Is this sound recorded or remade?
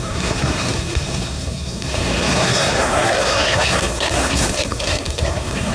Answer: remade